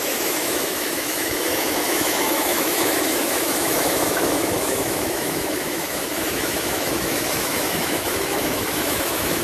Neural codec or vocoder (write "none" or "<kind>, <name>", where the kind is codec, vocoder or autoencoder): autoencoder, DAC-VAE